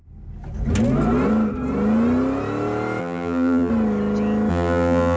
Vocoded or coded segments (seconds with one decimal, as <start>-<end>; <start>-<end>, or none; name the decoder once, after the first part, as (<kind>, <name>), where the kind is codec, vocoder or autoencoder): 3.0-3.7 (vocoder, BigVGAN v2); 4.5-5.2